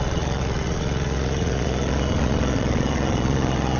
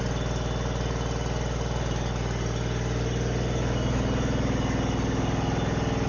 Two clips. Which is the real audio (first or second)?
second